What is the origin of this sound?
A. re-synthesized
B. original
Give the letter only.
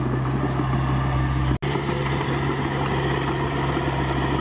B